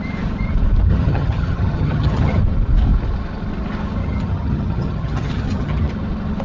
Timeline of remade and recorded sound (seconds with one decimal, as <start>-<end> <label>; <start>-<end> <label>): 0.0-0.9 recorded; 0.9-2.4 remade; 2.4-4.0 recorded; 4.0-5.9 remade; 5.9-6.4 recorded